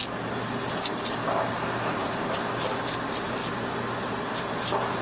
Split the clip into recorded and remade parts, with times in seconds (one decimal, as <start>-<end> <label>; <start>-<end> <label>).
0.0-3.4 remade; 3.4-4.4 recorded; 4.4-5.0 remade